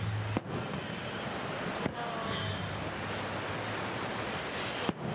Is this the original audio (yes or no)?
yes